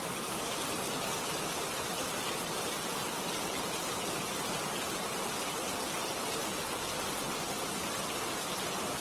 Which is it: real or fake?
real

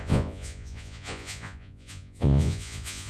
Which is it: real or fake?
fake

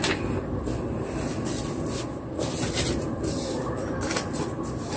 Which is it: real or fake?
real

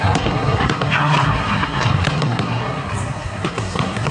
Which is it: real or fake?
fake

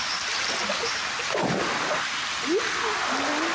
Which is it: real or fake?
real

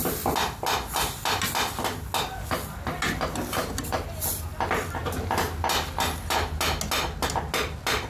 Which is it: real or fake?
real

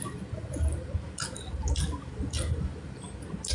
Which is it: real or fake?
real